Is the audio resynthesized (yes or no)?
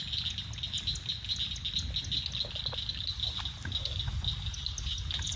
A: no